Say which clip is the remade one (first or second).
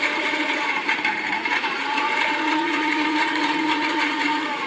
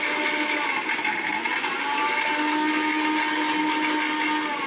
first